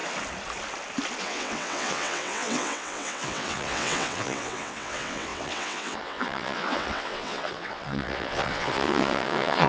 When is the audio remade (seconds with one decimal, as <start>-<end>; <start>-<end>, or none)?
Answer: 1.2-9.7